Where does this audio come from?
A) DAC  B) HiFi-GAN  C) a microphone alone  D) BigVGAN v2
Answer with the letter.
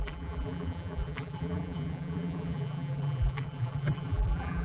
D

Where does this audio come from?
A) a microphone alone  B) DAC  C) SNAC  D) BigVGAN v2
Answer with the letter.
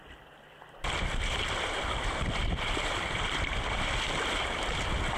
D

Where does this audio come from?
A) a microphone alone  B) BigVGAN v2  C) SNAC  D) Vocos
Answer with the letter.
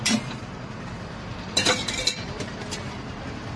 B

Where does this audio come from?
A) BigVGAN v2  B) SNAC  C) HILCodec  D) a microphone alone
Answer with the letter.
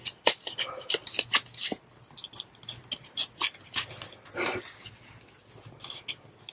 D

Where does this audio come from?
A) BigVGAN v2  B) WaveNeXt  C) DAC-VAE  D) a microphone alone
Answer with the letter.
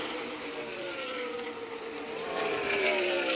A